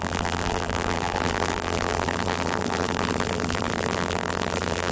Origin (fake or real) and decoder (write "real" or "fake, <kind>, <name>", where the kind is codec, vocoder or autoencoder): fake, vocoder, BigVGAN v2